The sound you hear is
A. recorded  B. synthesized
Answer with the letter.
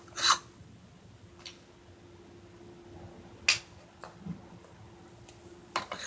A